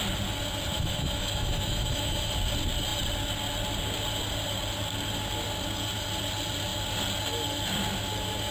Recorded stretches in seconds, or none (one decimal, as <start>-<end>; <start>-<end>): 0.0-0.7; 2.3-8.5